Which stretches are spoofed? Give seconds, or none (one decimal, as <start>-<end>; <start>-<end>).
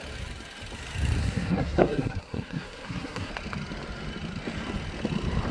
1.2-3.3